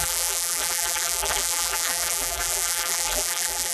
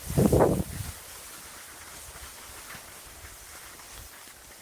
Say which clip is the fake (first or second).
first